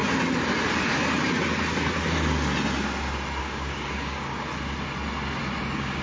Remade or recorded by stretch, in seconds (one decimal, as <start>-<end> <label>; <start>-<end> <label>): 0.0-3.4 recorded; 3.4-4.5 remade; 4.5-5.6 recorded; 5.6-6.0 remade